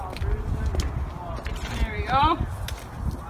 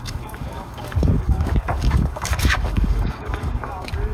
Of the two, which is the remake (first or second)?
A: second